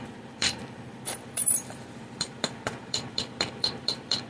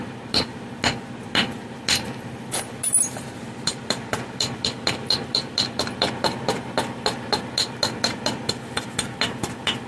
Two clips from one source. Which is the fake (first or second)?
first